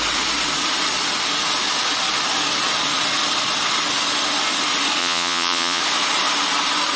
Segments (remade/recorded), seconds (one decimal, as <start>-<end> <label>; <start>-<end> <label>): 0.0-5.0 recorded; 5.0-5.8 remade; 5.8-7.0 recorded